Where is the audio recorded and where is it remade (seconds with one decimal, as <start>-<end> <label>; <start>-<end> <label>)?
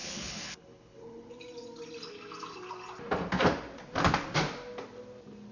0.0-1.4 remade; 1.4-5.5 recorded